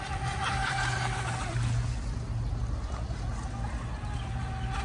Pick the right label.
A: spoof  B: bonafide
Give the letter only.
B